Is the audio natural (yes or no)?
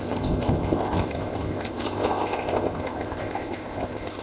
no